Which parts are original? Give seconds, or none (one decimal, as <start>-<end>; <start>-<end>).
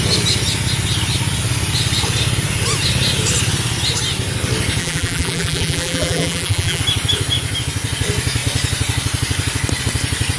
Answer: 0.0-4.8; 6.8-10.4